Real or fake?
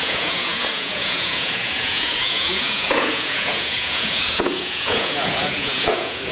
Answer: fake